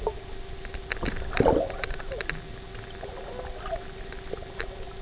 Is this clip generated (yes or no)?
no